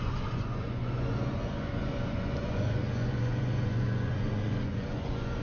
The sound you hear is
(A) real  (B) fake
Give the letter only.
B